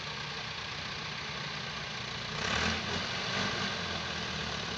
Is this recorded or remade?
recorded